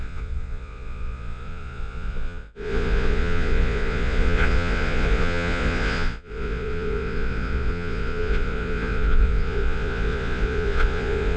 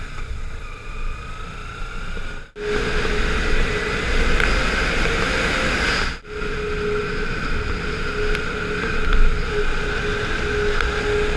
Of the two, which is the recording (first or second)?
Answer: second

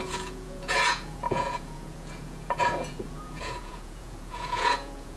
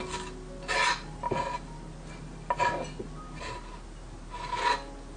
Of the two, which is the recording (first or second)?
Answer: second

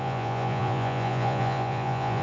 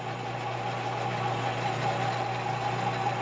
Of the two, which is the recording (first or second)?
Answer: second